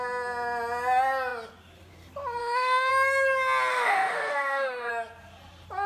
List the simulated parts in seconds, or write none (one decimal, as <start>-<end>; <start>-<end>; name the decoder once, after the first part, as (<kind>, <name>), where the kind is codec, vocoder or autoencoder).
2.4-2.9 (autoencoder, DAC-VAE); 3.7-4.9